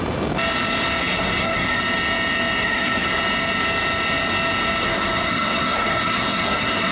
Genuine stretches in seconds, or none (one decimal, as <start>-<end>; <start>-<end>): 0.0-1.0; 1.8-2.6; 3.2-4.8